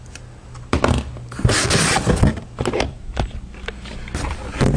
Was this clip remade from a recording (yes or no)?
no